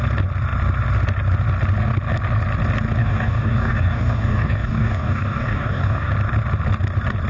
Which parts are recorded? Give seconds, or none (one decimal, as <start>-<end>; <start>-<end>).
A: 0.0-3.0; 6.1-7.3